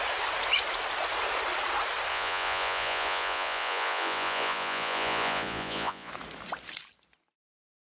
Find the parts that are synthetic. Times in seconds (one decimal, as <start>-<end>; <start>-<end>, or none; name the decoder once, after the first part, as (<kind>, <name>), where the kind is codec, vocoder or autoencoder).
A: 2.1-6.1 (vocoder, Vocos)